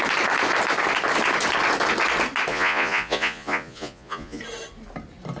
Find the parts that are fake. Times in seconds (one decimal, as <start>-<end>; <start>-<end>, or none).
2.5-4.4

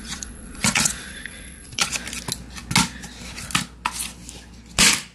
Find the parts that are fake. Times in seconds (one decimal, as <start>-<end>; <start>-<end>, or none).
0.0-1.9

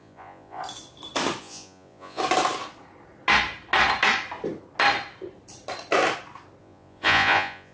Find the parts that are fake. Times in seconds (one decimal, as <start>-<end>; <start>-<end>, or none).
0.0-0.6; 1.4-2.2; 6.6-7.7

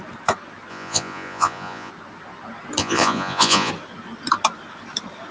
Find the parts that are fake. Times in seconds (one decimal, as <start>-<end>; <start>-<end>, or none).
0.7-1.9; 2.8-3.7

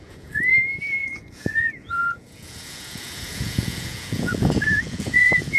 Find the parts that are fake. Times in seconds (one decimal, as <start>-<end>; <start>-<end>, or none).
0.0-0.5; 1.0-5.6

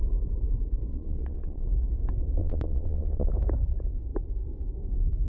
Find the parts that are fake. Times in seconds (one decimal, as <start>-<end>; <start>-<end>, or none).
0.9-1.7; 2.4-3.3